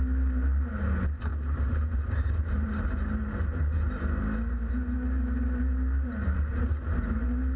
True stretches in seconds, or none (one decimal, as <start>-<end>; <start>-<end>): 0.0-7.6